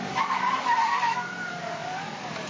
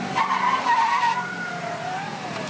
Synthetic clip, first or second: first